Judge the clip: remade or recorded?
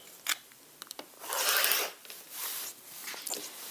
recorded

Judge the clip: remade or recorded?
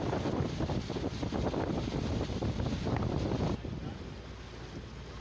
recorded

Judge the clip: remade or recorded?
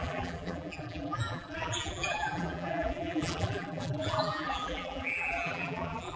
remade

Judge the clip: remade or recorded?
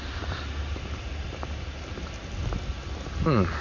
recorded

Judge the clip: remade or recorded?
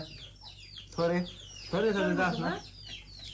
recorded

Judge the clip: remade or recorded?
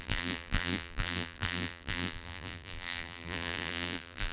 remade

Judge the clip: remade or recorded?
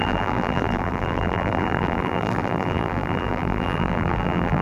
remade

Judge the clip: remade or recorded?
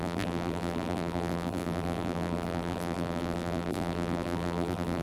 remade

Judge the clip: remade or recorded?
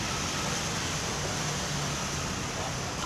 recorded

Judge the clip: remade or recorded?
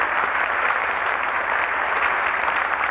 remade